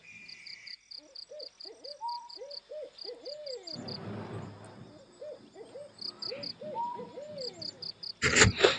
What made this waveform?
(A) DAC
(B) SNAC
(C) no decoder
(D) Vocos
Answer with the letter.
C